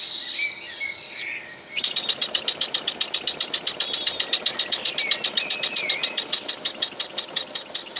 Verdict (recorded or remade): recorded